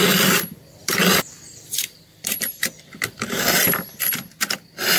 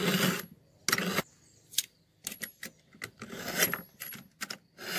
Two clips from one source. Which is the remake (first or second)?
first